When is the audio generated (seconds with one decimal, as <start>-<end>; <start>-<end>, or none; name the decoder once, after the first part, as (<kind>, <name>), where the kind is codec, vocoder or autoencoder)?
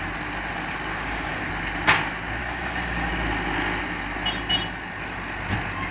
0.9-1.5 (codec, DAC); 2.4-3.1